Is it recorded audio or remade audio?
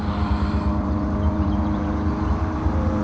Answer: remade